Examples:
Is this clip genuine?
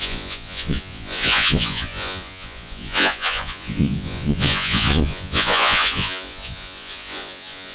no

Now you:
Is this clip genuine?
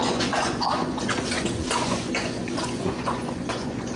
no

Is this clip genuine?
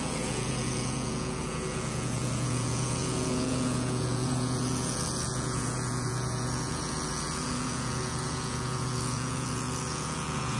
no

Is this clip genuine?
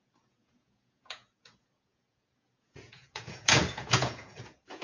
no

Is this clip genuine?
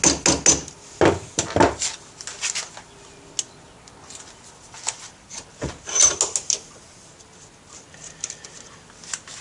yes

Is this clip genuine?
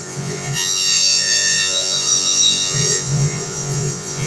no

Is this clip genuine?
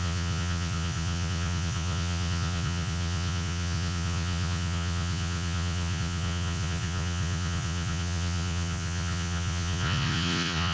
no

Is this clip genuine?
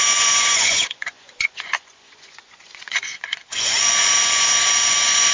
no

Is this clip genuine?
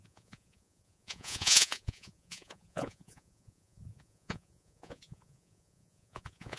no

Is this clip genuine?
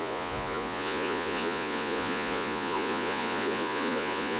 no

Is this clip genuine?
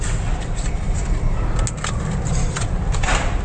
yes